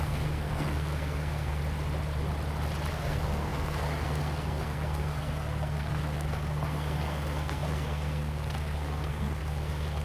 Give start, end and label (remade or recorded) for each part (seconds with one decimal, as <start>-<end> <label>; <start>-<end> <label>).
0.0-1.6 remade; 1.6-2.9 recorded; 2.9-10.0 remade